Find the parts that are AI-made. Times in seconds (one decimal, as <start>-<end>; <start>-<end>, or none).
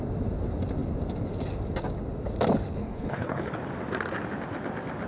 2.8-3.5